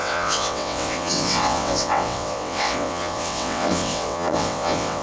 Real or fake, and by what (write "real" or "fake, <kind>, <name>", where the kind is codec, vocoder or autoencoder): fake, vocoder, WaveNeXt